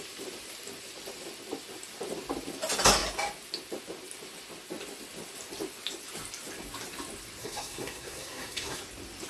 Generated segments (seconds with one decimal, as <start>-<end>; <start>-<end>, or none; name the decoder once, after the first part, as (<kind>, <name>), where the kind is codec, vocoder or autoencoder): 7.4-8.8 (codec, SNAC)